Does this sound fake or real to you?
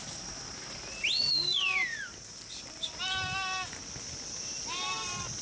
real